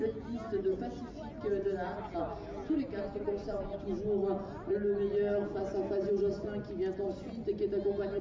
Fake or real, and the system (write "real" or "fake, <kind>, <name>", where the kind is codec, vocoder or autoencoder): real